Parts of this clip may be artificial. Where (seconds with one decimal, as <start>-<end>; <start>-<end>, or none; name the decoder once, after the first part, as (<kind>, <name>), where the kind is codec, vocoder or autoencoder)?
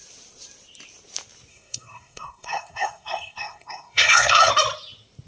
1.5-4.5 (codec, SNAC)